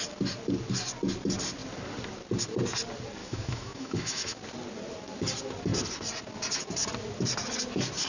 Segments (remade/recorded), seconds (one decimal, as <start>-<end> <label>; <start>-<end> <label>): 0.0-3.2 recorded; 3.2-4.4 remade; 4.4-8.1 recorded